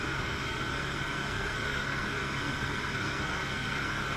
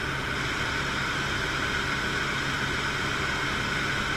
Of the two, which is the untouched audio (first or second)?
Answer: second